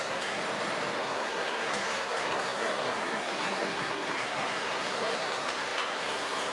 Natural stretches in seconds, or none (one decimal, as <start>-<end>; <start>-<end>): 0.4-1.0